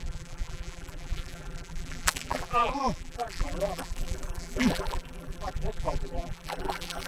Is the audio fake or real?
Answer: fake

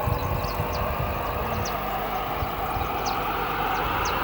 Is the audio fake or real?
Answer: real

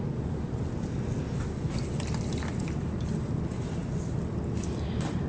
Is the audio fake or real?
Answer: real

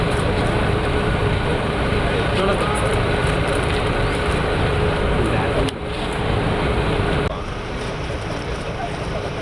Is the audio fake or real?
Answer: fake